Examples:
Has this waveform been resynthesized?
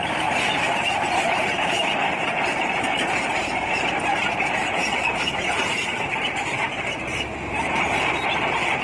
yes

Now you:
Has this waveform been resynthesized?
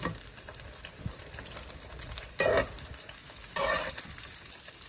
no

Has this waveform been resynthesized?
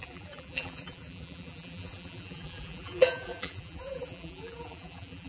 yes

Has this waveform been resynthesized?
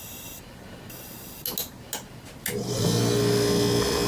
no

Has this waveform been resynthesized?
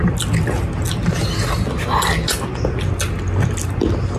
no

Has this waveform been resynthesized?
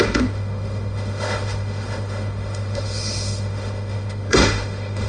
yes